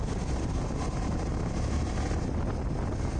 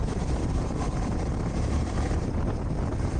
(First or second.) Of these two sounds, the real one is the first